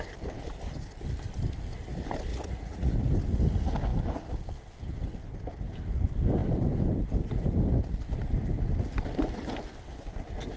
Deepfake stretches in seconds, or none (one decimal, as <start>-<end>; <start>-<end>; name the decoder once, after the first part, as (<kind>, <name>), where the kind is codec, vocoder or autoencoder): 2.3-2.9 (vocoder, Vocos)